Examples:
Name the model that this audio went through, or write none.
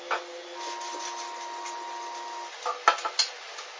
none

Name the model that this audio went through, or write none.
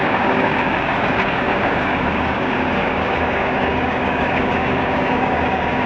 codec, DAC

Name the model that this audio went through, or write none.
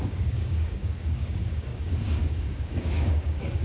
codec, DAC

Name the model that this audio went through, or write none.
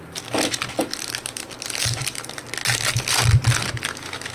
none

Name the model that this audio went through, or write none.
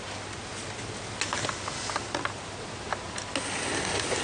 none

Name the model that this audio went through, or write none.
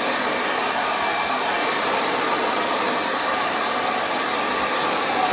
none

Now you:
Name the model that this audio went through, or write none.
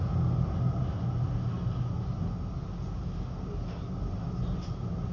none